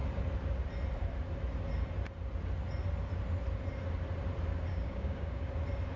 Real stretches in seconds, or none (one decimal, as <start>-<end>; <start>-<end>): 0.0-4.7; 5.5-6.0